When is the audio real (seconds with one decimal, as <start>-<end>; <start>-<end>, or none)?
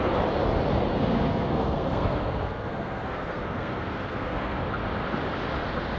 0.0-1.0; 4.6-6.0